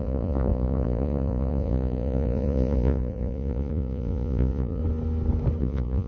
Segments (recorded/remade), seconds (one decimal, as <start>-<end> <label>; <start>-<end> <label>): 0.0-4.8 remade; 4.8-5.6 recorded; 5.6-6.1 remade